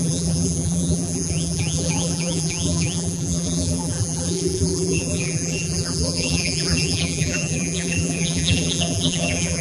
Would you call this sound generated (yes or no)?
yes